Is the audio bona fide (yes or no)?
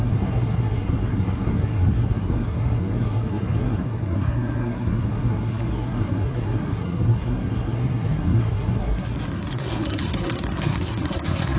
no